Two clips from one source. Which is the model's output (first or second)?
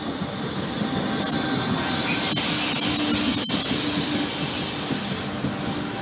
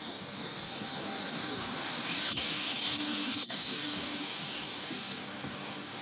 second